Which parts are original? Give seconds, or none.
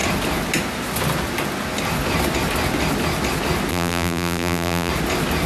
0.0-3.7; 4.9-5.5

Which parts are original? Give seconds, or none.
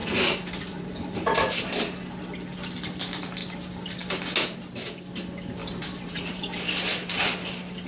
2.2-5.6; 7.2-7.9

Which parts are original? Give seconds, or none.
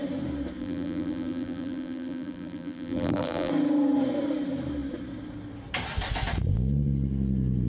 0.0-0.6; 3.5-7.7